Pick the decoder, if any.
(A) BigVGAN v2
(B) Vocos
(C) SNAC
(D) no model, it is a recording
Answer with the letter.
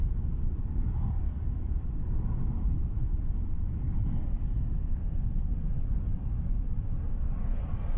D